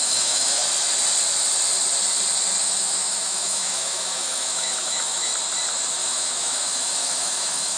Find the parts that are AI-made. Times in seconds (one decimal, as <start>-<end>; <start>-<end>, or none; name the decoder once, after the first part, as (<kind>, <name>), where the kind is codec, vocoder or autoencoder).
0.0-0.6 (autoencoder, DAC-VAE); 2.6-5.3; 6.0-7.8